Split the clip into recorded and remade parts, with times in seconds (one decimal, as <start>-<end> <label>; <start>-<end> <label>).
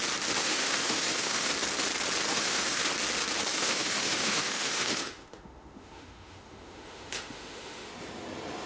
0.0-0.4 recorded; 0.4-1.5 remade; 1.5-2.3 recorded; 2.3-2.8 remade; 2.8-3.5 recorded; 3.5-7.9 remade; 7.9-8.7 recorded